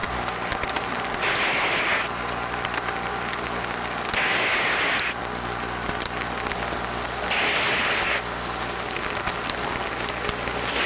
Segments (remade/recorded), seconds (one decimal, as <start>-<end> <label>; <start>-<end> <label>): 0.0-10.9 recorded